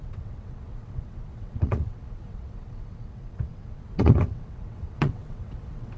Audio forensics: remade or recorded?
remade